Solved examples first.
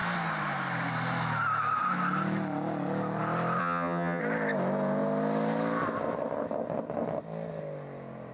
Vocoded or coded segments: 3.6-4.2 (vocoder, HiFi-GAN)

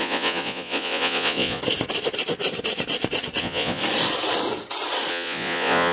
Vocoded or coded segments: 0.0-1.6 (vocoder, Vocos); 3.4-3.8; 5.1-5.9

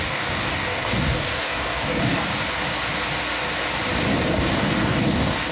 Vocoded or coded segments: 0.0-2.2 (codec, DAC); 4.5-5.5

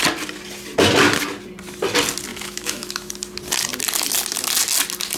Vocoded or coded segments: 2.3-3.1 (autoencoder, DAC-VAE)

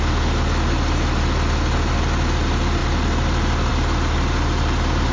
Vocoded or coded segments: none

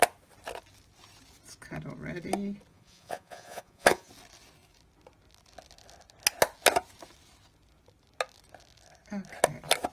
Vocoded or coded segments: 2.7-4.1 (vocoder, Vocos)

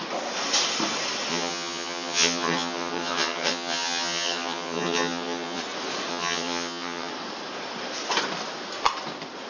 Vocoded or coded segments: 1.3-5.6 (vocoder, HiFi-GAN); 6.1-7.1

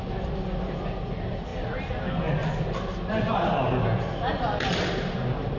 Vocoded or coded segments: none